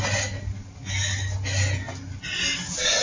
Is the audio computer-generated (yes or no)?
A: no